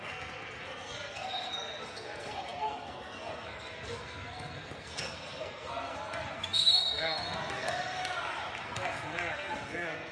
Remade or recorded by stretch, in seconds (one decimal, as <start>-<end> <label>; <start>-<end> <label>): 0.0-8.0 remade; 8.0-8.6 recorded; 8.6-10.1 remade